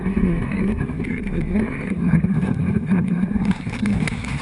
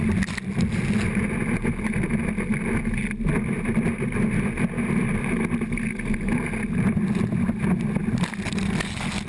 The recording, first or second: second